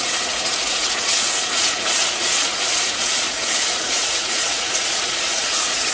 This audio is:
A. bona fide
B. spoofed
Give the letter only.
B